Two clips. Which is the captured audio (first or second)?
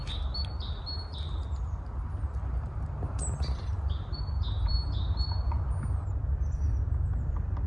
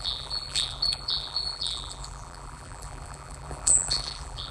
first